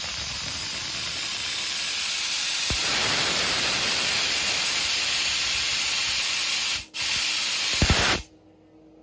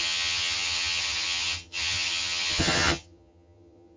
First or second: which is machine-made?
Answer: second